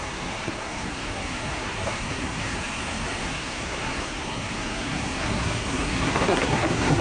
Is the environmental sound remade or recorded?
remade